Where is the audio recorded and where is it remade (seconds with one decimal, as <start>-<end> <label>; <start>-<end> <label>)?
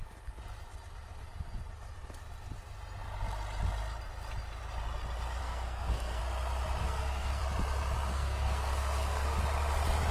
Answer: 0.0-5.4 recorded; 5.4-6.2 remade; 6.2-6.8 recorded; 6.8-7.4 remade; 7.4-8.1 recorded; 8.1-9.4 remade; 9.4-10.1 recorded